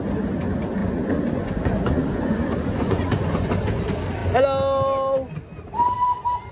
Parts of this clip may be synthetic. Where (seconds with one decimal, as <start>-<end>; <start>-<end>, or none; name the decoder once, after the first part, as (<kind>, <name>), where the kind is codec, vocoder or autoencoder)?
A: 0.8-3.5 (vocoder, Vocos)